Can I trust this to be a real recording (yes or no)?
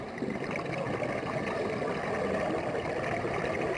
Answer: yes